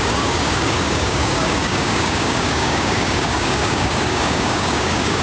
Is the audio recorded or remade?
remade